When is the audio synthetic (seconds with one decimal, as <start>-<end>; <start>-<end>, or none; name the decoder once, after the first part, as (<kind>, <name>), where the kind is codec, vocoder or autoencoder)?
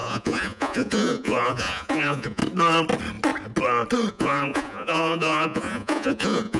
0.0-2.4 (vocoder, Vocos); 4.1-6.6